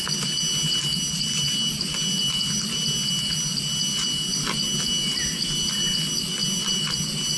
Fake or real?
real